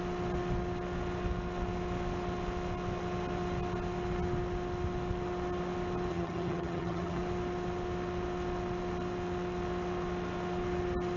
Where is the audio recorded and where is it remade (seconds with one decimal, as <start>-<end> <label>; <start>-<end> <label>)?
0.0-6.1 recorded; 6.1-7.2 remade; 7.2-11.2 recorded

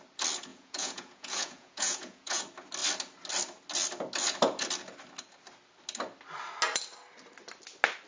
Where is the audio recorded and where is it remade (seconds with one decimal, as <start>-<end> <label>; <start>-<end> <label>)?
0.0-0.5 recorded; 0.5-2.4 remade; 2.4-8.1 recorded

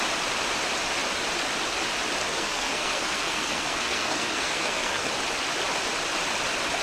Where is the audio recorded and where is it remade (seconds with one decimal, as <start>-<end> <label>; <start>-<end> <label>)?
0.0-2.3 recorded; 2.3-5.1 remade; 5.1-6.8 recorded

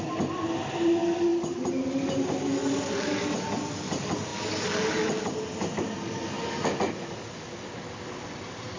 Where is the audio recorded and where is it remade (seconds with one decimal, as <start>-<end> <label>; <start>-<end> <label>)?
0.0-8.8 recorded